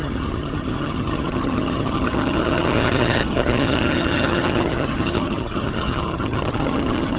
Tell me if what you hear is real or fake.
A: fake